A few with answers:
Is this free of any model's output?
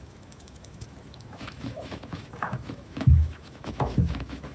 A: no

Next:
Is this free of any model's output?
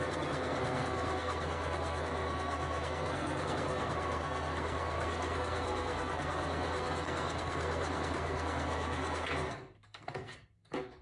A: no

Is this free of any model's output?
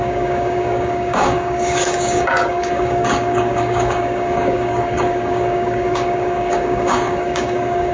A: no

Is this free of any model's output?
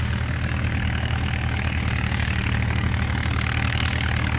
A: no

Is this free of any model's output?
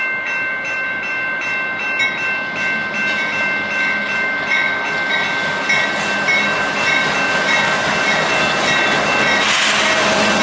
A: yes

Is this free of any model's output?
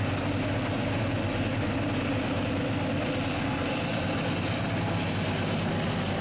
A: yes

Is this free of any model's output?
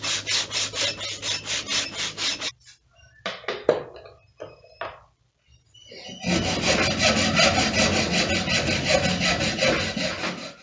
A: yes